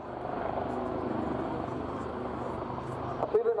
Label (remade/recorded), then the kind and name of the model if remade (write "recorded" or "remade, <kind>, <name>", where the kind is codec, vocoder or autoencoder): recorded